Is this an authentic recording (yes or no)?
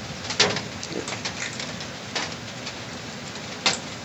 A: yes